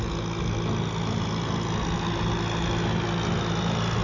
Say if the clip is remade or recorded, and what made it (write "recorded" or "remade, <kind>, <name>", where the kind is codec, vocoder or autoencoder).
recorded